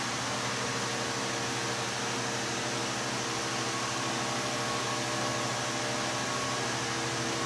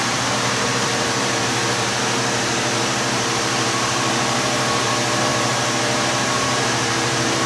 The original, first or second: first